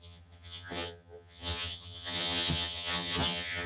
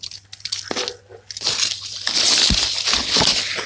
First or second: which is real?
second